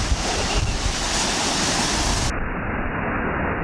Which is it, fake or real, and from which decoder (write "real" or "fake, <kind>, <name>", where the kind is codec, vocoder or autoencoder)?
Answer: real